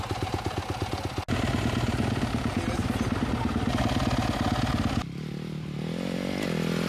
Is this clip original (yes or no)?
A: yes